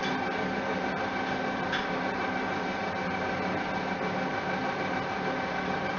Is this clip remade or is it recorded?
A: recorded